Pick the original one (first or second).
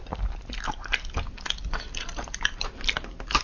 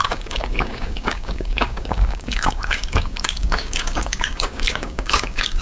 first